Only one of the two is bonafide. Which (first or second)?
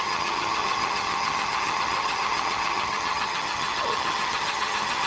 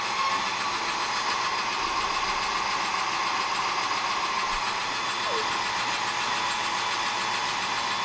second